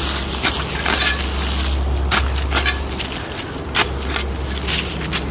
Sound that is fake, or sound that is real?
real